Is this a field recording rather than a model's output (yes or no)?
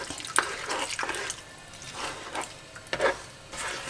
yes